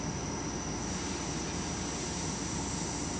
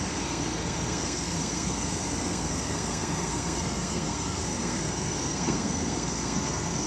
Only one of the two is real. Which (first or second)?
first